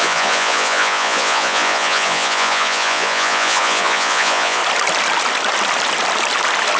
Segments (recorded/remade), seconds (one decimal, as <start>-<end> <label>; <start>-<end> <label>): 0.0-4.6 remade; 4.6-6.8 recorded